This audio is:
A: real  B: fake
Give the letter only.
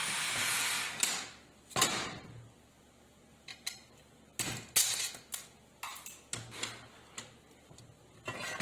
A